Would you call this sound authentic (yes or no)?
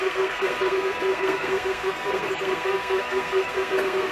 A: no